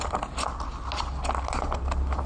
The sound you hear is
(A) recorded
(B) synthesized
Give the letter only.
A